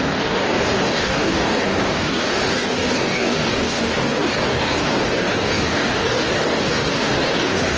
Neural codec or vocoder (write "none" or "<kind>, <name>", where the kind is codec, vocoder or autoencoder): codec, DAC